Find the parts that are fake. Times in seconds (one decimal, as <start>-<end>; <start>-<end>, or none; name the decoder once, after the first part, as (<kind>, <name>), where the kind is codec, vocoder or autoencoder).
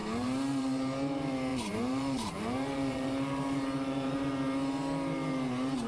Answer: 0.0-0.8 (vocoder, BigVGAN v2); 1.5-4.3